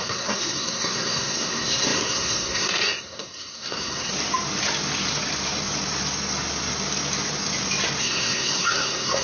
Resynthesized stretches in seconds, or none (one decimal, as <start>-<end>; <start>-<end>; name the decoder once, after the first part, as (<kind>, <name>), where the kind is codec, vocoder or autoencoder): 0.0-4.1 (codec, SNAC); 8.0-9.2